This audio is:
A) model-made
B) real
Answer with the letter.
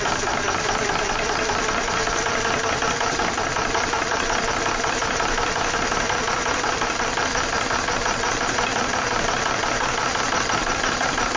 A